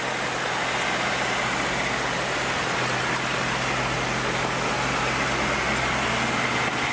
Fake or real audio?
real